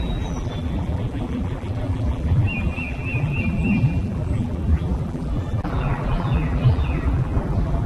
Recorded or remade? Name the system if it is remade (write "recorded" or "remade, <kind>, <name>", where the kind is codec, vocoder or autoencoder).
remade, vocoder, BigVGAN v2